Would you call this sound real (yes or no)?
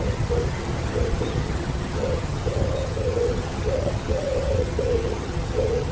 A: no